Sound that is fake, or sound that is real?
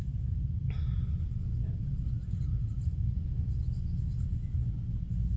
real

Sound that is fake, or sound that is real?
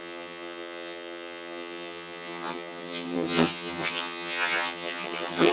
fake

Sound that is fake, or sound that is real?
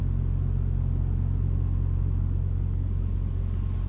real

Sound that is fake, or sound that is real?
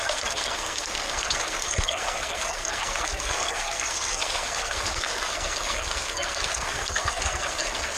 fake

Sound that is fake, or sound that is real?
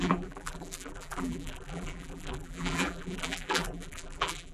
fake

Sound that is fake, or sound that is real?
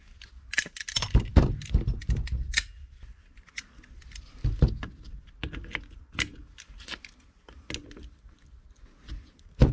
real